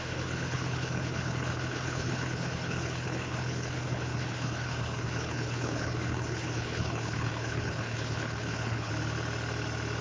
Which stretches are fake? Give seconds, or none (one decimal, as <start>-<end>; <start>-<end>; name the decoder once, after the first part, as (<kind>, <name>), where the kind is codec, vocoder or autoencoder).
0.0-8.9 (codec, HILCodec)